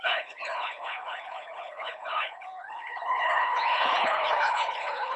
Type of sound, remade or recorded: remade